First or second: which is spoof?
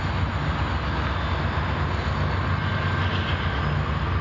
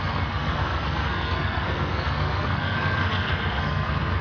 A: second